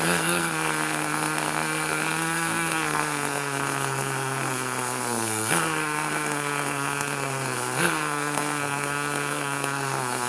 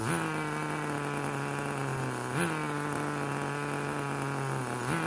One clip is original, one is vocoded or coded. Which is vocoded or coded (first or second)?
first